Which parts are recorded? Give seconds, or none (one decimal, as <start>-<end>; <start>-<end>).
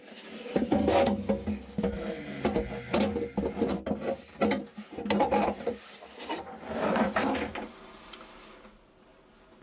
0.0-4.7; 7.3-9.6